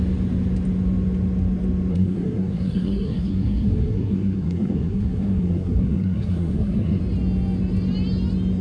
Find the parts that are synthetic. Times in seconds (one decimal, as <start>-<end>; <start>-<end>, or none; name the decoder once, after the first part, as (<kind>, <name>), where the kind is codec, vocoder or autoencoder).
1.9-7.0 (codec, SNAC)

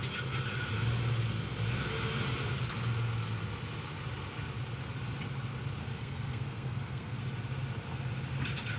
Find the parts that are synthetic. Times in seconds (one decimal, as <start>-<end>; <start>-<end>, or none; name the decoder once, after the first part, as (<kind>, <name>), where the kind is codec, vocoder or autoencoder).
5.8-7.2 (codec, SNAC)